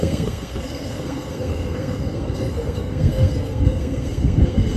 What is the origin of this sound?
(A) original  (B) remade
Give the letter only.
B